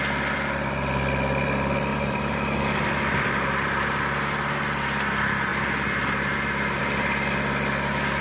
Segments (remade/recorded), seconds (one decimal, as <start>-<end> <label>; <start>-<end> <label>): 0.0-1.9 recorded; 1.9-2.9 remade; 2.9-8.2 recorded